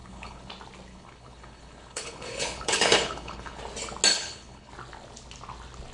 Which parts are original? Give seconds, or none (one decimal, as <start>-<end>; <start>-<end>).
0.5-0.9; 3.6-4.1; 4.7-5.9